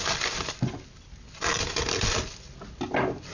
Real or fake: fake